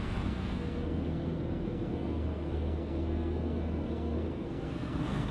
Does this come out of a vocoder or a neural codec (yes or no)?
yes